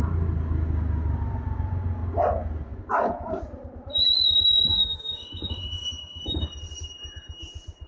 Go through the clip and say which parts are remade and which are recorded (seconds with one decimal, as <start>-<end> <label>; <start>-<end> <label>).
0.0-4.7 recorded; 4.7-6.2 remade; 6.2-7.9 recorded